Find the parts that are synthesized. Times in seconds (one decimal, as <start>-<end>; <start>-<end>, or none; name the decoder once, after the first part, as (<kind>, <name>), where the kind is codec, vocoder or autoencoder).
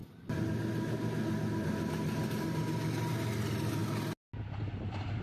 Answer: none